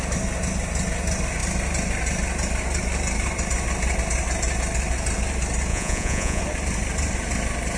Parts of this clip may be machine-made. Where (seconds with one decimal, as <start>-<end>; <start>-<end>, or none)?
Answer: 5.7-6.4